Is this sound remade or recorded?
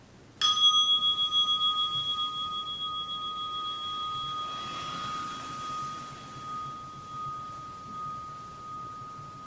recorded